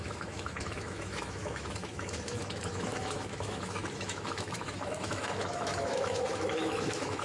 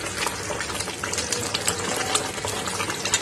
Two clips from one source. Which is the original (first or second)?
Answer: second